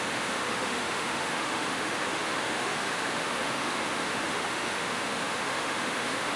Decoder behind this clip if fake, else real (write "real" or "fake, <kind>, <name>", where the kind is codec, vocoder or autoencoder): fake, autoencoder, DAC-VAE